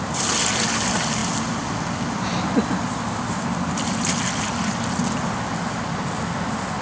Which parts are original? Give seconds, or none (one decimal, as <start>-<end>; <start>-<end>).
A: 0.0-6.8